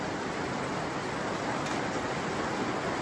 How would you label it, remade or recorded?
recorded